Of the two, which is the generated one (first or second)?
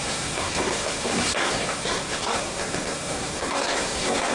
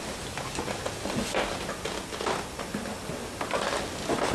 first